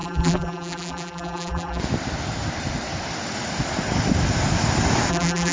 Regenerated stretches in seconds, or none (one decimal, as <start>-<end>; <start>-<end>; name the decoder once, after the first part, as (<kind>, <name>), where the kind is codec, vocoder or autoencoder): 0.0-1.8 (vocoder, BigVGAN v2); 5.1-5.5